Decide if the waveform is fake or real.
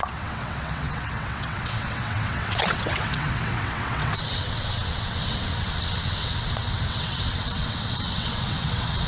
fake